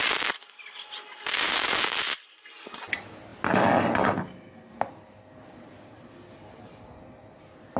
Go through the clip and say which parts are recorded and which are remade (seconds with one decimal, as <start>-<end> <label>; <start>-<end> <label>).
0.0-7.8 recorded

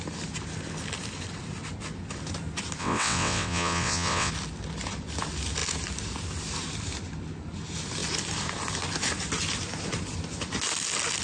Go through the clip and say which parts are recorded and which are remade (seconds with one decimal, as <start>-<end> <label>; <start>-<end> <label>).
0.0-2.8 recorded; 2.8-4.3 remade; 4.3-11.2 recorded

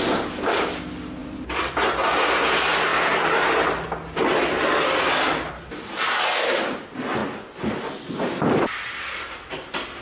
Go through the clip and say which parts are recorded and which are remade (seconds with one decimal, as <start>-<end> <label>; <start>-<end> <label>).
0.0-1.2 recorded; 1.2-1.7 remade; 1.7-10.0 recorded

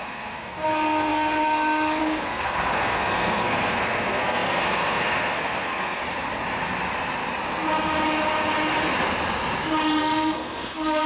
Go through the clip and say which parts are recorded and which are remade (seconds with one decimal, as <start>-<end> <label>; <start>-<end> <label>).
0.0-6.0 remade; 6.0-10.0 recorded; 10.0-11.1 remade

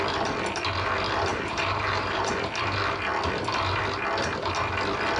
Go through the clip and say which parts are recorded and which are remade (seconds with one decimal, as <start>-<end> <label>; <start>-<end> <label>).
0.0-1.3 recorded; 1.3-2.3 remade; 2.3-5.2 recorded

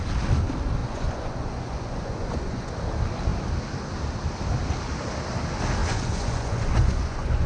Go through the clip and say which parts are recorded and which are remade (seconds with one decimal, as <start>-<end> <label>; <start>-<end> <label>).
0.0-0.8 recorded; 0.8-2.7 remade; 2.7-5.8 recorded; 5.8-7.5 remade

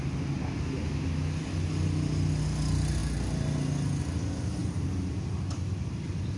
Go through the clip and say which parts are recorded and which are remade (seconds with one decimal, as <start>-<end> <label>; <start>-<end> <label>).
0.0-6.4 recorded

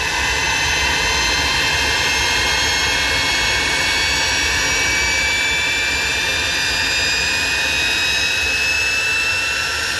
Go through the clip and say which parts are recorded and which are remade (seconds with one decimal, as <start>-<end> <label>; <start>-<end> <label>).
0.0-10.0 recorded